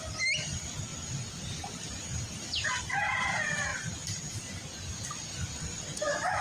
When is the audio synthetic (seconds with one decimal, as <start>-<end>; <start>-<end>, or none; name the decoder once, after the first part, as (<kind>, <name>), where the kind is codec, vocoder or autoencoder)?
none